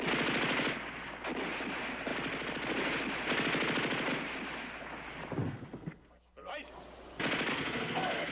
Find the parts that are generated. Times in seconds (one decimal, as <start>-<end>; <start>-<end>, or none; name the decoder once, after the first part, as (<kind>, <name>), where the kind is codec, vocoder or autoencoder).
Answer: 5.4-6.5 (codec, SNAC); 7.5-8.3